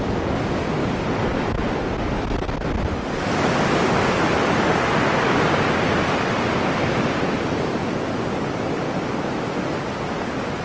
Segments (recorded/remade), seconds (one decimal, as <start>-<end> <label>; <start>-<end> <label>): 0.0-10.6 recorded